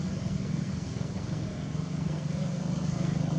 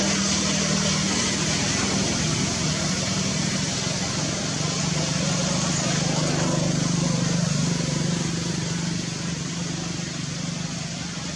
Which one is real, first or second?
second